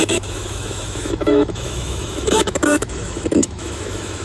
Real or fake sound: fake